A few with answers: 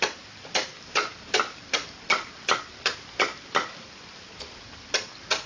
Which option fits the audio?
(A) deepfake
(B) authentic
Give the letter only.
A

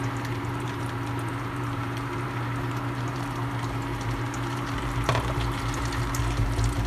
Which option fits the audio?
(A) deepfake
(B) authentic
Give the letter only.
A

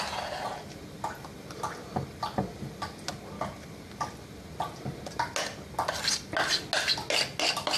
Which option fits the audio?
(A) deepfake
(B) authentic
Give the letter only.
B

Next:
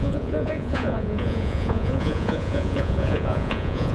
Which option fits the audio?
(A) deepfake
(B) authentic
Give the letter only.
A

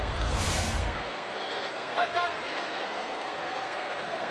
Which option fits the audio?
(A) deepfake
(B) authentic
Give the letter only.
A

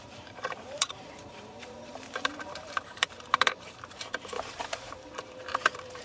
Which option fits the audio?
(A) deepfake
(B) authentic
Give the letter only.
A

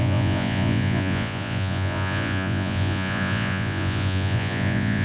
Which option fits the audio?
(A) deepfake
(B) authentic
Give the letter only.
A